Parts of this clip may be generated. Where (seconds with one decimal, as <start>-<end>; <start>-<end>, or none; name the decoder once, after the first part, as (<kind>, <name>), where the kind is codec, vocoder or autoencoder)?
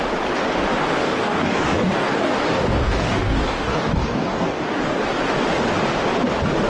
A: 1.0-5.0 (codec, DAC)